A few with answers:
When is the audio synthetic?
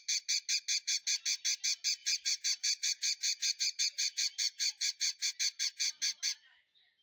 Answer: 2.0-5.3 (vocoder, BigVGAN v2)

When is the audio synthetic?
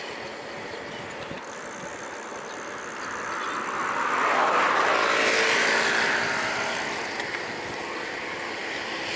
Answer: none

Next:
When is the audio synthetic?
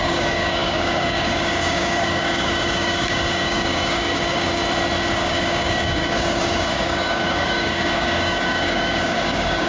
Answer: 0.0-4.6 (codec, DAC); 5.1-9.7